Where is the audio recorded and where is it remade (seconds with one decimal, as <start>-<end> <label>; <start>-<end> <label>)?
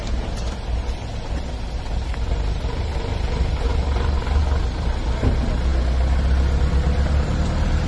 0.0-2.1 recorded; 2.1-2.8 remade; 2.8-3.7 recorded; 3.7-4.4 remade; 4.4-7.9 recorded